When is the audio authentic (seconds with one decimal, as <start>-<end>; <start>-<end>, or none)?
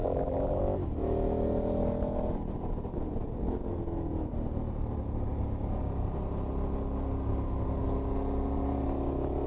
0.6-9.5